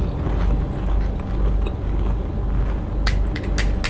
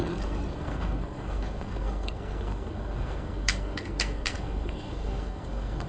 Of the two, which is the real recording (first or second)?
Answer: first